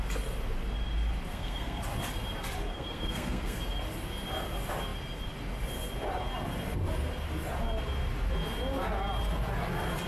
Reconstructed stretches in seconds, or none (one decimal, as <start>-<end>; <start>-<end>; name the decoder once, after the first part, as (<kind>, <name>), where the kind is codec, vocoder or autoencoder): 1.3-1.8 (codec, SNAC); 2.7-3.6